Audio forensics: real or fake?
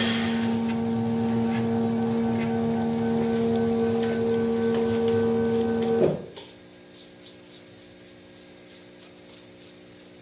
real